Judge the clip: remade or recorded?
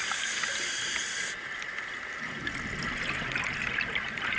recorded